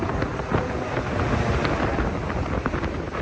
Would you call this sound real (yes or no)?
yes